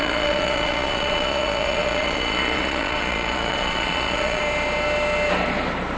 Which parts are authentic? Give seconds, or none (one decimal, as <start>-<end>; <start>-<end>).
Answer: 4.4-6.0